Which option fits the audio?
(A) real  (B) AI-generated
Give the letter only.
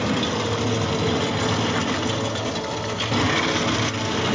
A